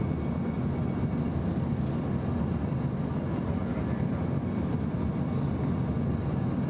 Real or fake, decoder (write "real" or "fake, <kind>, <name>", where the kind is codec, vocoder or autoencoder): real